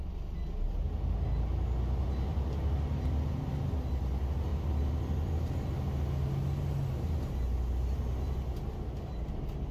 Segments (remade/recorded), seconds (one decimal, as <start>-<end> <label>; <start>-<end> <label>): 0.0-2.3 recorded; 2.3-3.5 remade; 3.5-4.5 recorded; 4.5-5.7 remade; 5.7-9.7 recorded